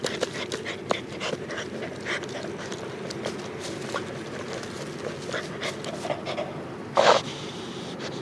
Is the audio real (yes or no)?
yes